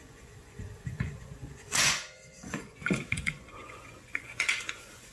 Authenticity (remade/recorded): remade